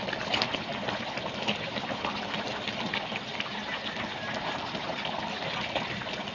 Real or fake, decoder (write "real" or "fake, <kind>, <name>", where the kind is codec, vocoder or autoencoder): real